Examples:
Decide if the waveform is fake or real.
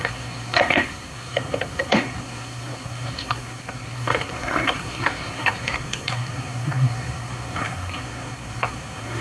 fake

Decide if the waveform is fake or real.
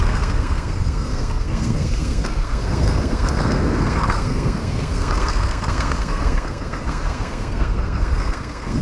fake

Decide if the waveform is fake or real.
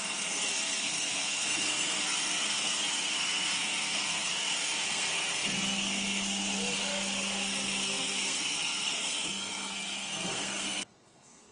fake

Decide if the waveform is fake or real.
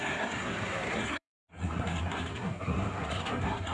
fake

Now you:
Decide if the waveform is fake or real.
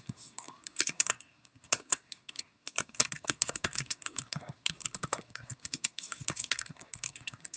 fake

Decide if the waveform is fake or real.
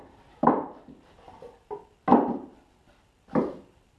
real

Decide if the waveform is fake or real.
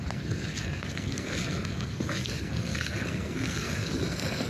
fake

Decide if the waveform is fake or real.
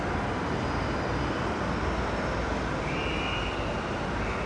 real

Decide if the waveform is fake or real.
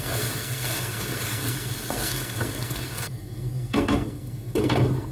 fake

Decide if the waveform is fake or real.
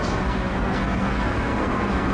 fake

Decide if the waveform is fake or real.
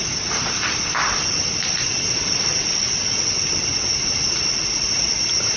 real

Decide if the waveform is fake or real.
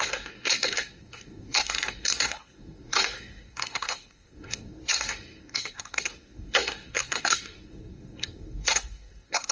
fake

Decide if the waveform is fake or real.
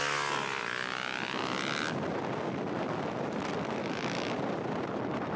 real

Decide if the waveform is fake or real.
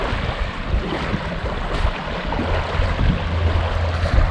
real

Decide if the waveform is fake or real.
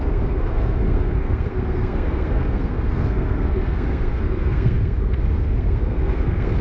fake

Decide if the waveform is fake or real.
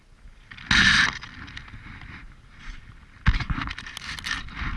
real